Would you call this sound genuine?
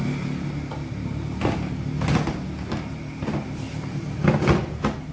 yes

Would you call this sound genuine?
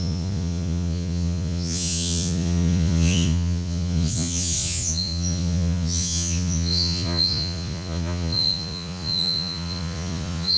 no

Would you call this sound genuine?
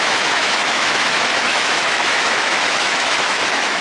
no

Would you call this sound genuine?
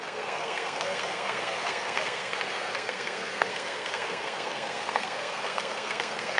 no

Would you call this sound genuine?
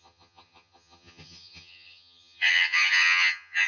no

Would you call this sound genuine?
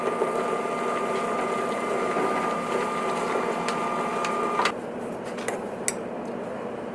yes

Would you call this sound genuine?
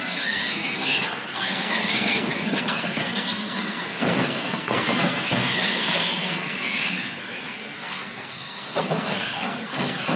no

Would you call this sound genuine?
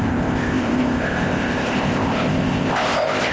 no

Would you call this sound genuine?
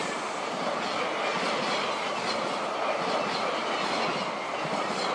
yes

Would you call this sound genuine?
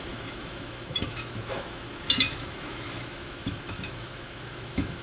no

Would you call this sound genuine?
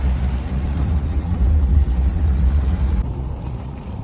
no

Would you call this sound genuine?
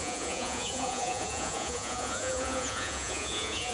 no